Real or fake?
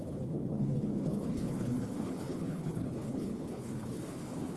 fake